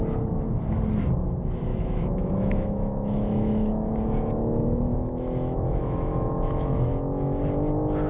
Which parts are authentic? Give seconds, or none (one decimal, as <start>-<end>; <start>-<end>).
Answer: 0.0-1.7; 3.9-4.9; 7.4-8.1